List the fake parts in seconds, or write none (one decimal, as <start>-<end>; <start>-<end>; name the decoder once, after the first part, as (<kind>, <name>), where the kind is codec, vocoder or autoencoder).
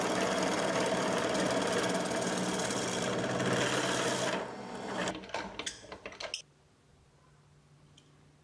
none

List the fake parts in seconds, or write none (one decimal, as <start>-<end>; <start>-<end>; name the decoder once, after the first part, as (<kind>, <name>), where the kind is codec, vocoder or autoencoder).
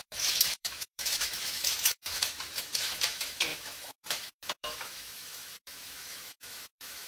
0.0-7.1 (autoencoder, DAC-VAE)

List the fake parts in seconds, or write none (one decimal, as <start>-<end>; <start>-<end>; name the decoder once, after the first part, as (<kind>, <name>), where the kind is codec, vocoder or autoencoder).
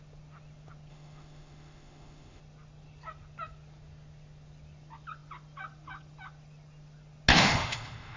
0.9-2.4 (autoencoder, DAC-VAE); 7.3-8.2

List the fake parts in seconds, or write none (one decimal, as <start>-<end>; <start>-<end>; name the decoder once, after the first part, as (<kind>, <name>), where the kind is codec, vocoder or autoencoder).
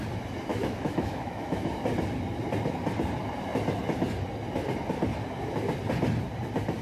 0.5-1.7 (autoencoder, DAC-VAE)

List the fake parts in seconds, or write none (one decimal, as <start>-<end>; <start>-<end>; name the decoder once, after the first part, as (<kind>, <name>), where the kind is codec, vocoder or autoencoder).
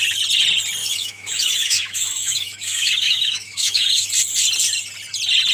0.8-4.1 (autoencoder, DAC-VAE)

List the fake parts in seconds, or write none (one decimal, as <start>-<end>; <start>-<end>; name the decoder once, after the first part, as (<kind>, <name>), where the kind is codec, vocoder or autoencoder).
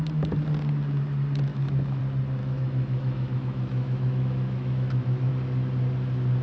1.5-2.0 (autoencoder, DAC-VAE); 2.4-5.3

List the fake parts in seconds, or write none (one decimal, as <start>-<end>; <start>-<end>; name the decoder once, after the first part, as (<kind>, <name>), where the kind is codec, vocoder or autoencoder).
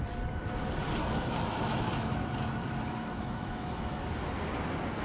1.0-4.0 (autoencoder, DAC-VAE)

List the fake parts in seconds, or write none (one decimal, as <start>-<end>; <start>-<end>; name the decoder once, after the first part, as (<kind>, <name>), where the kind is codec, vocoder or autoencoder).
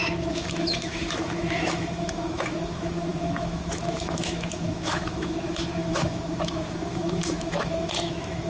0.0-8.5 (autoencoder, DAC-VAE)